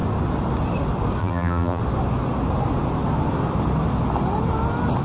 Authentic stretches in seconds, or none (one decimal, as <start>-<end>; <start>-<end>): 0.0-1.2; 1.8-5.0